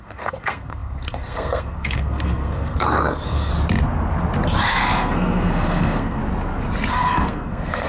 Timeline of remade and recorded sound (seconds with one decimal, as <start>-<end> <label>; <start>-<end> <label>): 0.0-3.5 remade; 3.5-4.7 recorded; 4.7-6.2 remade; 6.2-6.9 recorded; 6.9-7.9 remade